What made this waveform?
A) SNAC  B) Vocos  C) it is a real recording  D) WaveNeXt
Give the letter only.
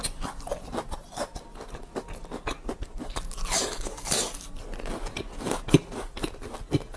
C